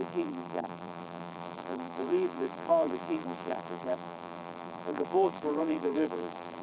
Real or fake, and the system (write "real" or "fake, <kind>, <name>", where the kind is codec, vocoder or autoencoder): fake, vocoder, BigVGAN v2